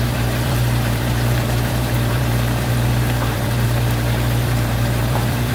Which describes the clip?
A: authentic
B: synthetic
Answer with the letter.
B